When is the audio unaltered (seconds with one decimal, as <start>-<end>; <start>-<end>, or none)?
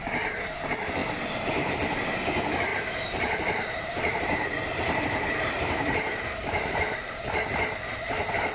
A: 0.0-2.7; 7.1-8.5